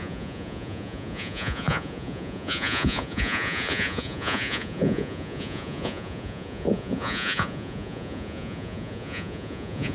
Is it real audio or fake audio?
fake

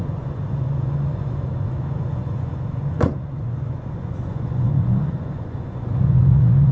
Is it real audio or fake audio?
fake